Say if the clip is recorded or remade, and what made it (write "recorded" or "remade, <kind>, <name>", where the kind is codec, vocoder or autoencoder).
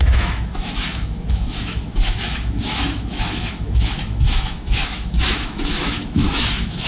remade, autoencoder, DAC-VAE